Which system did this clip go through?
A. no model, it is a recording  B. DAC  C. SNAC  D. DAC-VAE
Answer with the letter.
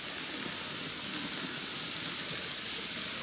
A